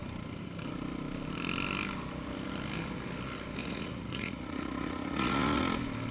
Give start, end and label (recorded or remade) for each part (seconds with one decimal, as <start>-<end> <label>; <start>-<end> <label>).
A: 0.0-3.6 recorded; 3.6-5.6 remade; 5.6-6.1 recorded